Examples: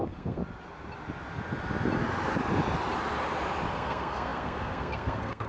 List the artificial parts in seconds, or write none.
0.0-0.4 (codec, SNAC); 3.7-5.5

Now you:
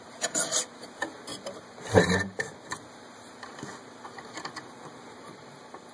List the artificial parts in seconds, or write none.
none

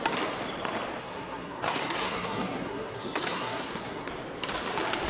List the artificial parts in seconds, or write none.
1.0-4.1 (codec, SNAC)

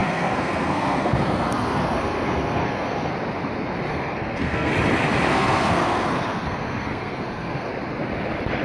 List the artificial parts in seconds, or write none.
0.0-3.1 (codec, SNAC); 3.9-4.7; 5.3-7.7

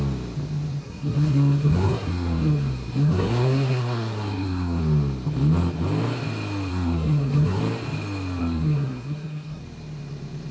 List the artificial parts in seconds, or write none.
0.8-4.8 (codec, SNAC); 6.7-7.6; 8.4-9.6